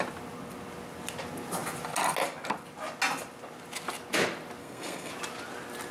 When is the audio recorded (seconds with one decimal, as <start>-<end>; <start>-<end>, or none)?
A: 0.0-4.6; 5.1-5.9